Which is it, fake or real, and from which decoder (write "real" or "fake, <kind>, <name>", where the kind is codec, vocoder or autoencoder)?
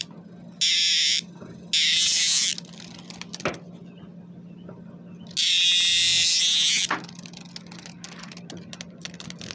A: real